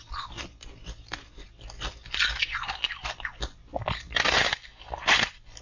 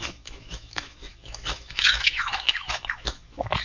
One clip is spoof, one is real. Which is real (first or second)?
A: first